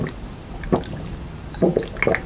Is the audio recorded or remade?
recorded